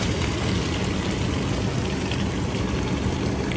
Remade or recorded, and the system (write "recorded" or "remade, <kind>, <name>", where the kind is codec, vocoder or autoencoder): recorded